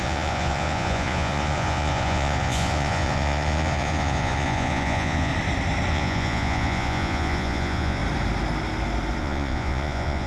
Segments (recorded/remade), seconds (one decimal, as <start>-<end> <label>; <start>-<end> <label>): 0.0-5.3 remade; 5.3-5.9 recorded; 5.9-8.0 remade; 8.0-9.2 recorded; 9.2-10.3 remade